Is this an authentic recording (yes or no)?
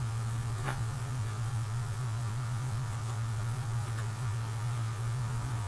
no